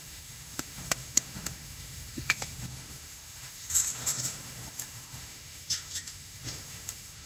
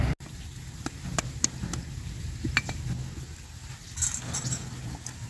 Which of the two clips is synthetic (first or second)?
first